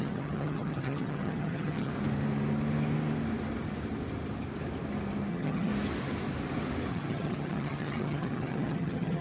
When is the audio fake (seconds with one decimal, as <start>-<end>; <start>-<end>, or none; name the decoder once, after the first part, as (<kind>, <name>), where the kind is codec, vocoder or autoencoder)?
0.0-1.9 (vocoder, HiFi-GAN); 5.3-5.7; 6.9-9.2

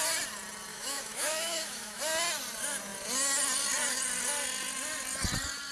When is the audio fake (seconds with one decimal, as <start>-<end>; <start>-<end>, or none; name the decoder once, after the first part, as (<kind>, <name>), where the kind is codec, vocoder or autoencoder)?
0.7-2.0 (autoencoder, DAC-VAE)

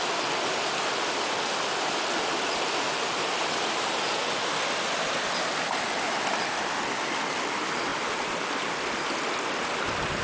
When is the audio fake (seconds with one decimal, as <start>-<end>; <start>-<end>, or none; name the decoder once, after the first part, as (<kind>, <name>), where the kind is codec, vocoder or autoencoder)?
none

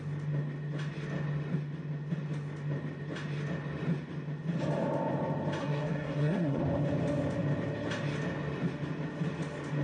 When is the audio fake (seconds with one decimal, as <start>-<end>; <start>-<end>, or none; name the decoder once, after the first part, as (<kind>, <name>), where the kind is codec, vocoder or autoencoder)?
5.6-6.6 (codec, SNAC)

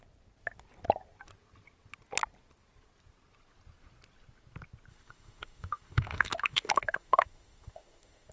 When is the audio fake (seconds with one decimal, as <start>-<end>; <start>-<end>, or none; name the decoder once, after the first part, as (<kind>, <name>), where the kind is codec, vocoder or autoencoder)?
4.9-8.3 (autoencoder, DAC-VAE)

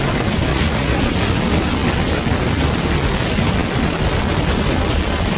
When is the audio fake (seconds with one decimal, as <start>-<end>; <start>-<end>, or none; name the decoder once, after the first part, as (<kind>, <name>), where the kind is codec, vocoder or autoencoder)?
0.5-1.0 (vocoder, Vocos)

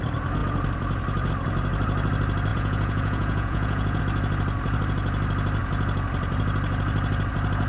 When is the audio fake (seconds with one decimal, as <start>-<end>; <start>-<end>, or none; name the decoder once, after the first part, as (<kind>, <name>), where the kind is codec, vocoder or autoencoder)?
2.5-4.0 (vocoder, Vocos)

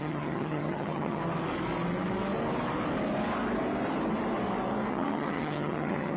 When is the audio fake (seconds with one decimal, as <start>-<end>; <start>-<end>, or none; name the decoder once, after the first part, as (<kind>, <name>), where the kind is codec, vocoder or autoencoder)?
0.0-1.2 (vocoder, HiFi-GAN); 4.9-6.2